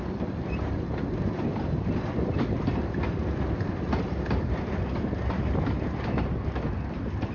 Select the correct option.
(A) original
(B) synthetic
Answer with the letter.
B